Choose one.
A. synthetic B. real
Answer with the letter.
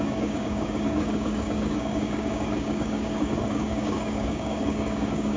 A